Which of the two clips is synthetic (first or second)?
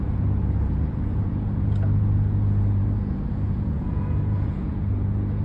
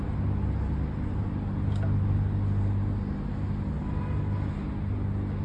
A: first